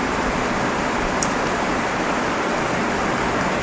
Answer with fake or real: fake